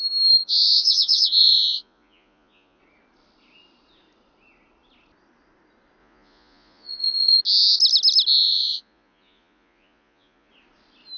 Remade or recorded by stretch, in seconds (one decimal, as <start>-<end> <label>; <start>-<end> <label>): 0.0-0.4 recorded; 0.4-2.8 remade; 2.8-6.0 recorded; 6.0-7.4 remade; 7.4-8.4 recorded; 8.4-10.5 remade; 10.5-11.2 recorded